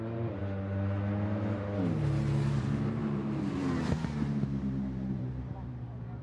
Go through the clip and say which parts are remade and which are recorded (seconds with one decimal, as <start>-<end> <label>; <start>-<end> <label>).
0.0-0.4 remade; 0.4-2.6 recorded; 2.6-6.2 remade